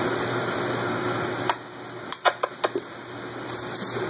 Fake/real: real